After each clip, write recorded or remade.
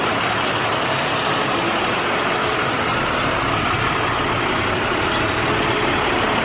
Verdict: recorded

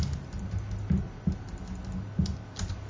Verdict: recorded